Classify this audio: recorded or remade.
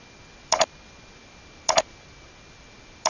recorded